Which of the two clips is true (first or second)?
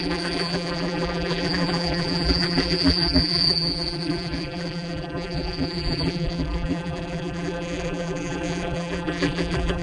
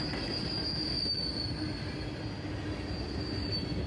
second